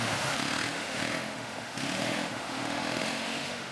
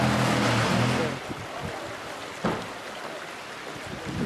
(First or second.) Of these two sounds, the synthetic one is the first